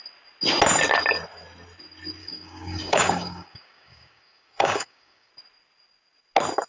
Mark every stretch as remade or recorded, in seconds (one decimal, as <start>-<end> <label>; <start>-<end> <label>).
0.0-2.2 recorded; 2.2-5.3 remade; 5.3-6.7 recorded